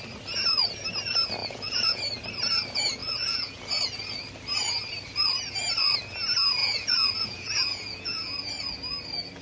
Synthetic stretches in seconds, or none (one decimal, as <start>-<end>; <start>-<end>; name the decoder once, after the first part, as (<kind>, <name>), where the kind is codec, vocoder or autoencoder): 1.4-2.0 (vocoder, Vocos); 3.0-3.6; 6.6-8.5

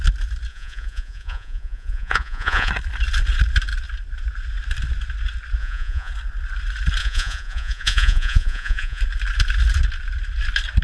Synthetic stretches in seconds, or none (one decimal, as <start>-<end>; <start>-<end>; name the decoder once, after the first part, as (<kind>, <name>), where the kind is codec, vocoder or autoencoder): 0.5-2.7 (vocoder, Vocos); 5.6-6.1; 7.0-9.0

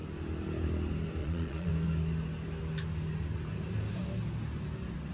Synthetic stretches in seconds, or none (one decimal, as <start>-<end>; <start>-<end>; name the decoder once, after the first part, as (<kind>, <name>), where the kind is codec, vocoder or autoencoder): 1.2-1.7 (vocoder, Vocos)

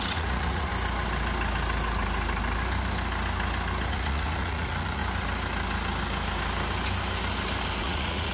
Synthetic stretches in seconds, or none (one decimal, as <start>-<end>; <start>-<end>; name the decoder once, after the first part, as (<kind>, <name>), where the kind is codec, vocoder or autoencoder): 0.0-0.7 (vocoder, Vocos); 3.9-5.0; 7.8-8.3

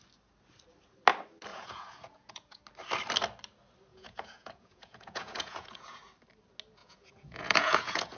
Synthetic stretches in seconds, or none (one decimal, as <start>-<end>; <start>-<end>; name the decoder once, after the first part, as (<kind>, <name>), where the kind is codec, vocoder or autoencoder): 1.5-2.6 (vocoder, Vocos); 3.9-6.0; 6.8-8.2

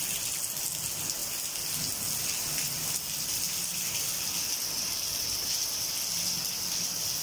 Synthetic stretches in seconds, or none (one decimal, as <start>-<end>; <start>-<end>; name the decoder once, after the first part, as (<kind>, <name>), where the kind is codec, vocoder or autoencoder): none

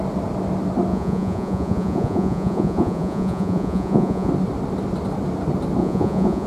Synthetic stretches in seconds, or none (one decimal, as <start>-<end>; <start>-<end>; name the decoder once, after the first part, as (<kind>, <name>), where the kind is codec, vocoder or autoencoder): 0.9-4.3 (vocoder, Vocos); 5.8-6.5